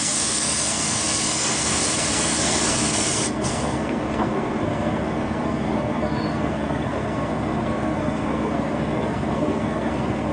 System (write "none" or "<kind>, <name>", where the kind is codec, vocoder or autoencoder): codec, SNAC